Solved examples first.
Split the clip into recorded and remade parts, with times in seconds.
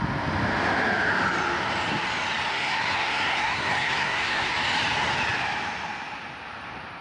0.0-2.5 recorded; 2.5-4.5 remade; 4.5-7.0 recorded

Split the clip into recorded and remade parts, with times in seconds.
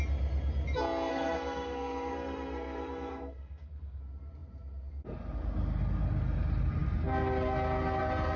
0.0-1.1 recorded; 1.1-4.0 remade; 4.0-8.4 recorded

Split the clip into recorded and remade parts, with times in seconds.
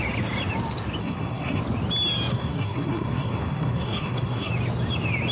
0.0-1.0 recorded; 1.0-1.6 remade; 1.6-2.3 recorded; 2.3-4.5 remade; 4.5-5.3 recorded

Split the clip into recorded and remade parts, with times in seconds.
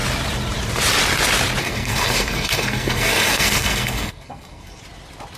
0.0-1.6 recorded; 1.6-4.8 remade; 4.8-5.4 recorded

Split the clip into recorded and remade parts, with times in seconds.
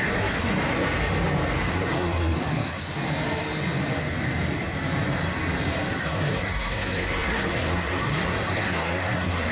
0.0-0.5 remade; 0.5-1.7 recorded; 1.7-2.8 remade; 2.8-6.0 recorded; 6.0-9.5 remade